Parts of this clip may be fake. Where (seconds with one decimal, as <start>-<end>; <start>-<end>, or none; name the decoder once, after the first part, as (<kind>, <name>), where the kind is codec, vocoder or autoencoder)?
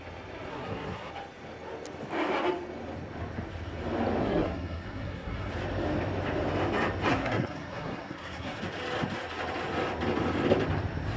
0.5-1.1 (codec, SNAC); 4.2-5.5; 7.1-8.6